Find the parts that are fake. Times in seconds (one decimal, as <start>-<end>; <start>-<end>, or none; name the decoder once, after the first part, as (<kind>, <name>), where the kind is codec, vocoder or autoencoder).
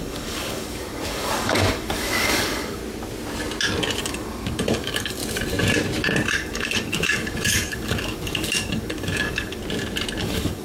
0.0-2.8 (codec, DAC); 4.0-5.2; 6.3-9.6; 10.2-10.6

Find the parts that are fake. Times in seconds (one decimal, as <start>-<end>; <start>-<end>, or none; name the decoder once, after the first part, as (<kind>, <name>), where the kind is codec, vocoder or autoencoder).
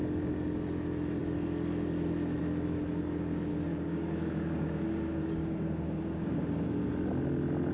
3.5-6.9 (codec, DAC)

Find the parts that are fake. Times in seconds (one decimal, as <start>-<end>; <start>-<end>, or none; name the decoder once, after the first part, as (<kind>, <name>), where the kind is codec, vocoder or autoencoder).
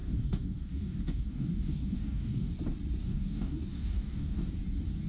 0.0-2.5 (codec, DAC); 3.0-4.5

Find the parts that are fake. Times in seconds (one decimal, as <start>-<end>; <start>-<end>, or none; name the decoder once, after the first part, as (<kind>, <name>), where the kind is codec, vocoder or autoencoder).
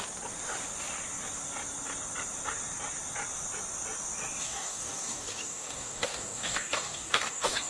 4.4-7.7 (codec, DAC)